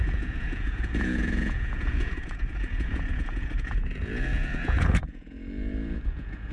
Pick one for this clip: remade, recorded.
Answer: remade